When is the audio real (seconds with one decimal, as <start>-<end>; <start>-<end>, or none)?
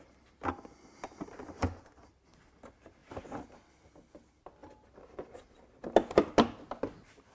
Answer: 0.0-7.3